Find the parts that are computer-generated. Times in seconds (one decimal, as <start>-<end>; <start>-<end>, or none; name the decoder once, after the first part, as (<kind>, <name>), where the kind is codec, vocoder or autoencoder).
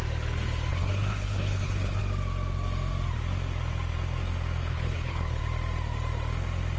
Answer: 0.7-2.0 (codec, HILCodec); 4.6-5.4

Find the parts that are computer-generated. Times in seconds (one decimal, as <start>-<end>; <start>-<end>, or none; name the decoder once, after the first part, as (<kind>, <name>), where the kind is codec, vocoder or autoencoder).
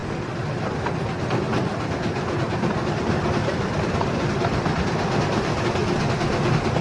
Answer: 3.4-5.6 (vocoder, BigVGAN v2)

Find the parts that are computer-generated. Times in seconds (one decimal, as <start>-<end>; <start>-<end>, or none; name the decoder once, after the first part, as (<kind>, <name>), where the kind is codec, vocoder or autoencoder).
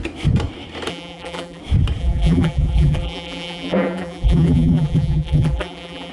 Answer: 0.9-1.6 (vocoder, BigVGAN v2); 2.0-6.1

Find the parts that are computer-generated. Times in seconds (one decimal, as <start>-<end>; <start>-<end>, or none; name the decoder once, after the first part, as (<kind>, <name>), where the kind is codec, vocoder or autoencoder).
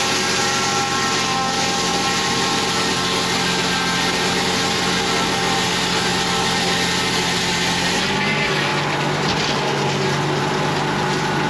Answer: none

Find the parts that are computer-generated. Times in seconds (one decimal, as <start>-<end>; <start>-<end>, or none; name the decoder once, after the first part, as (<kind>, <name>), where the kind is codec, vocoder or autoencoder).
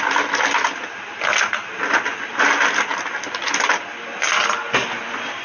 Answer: none